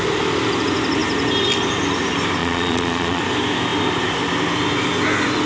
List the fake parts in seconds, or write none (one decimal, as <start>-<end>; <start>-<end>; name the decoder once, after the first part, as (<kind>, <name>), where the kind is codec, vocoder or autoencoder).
2.4-3.2 (vocoder, Vocos)